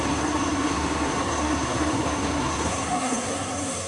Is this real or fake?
fake